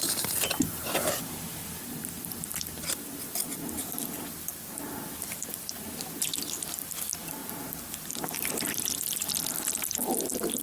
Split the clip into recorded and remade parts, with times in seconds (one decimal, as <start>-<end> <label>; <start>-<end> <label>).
0.0-1.6 recorded; 1.6-6.0 remade; 6.0-7.4 recorded; 7.4-10.6 remade